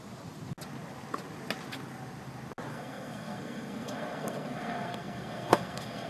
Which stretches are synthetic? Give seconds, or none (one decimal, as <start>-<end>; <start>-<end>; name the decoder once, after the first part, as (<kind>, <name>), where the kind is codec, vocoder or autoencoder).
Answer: 2.7-6.1 (codec, SNAC)